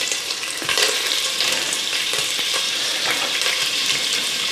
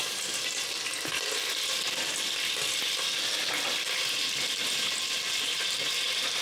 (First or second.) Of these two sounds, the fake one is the first